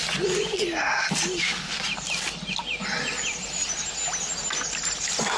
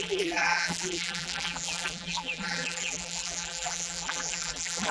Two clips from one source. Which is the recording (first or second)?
first